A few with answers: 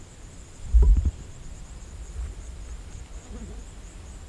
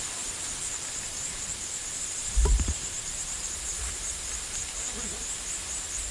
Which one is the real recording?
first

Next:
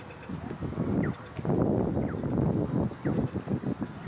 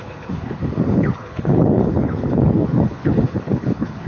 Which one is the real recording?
first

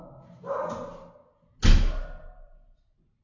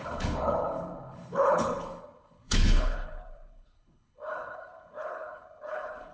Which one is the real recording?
first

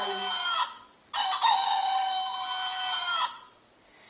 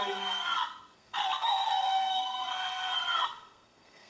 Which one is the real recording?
first